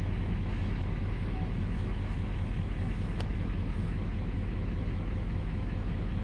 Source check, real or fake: fake